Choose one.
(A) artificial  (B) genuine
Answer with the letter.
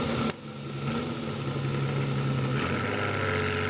B